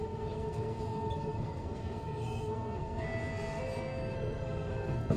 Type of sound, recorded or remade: remade